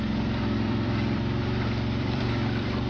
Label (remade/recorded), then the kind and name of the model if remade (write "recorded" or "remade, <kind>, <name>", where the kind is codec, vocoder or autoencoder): remade, vocoder, BigVGAN v2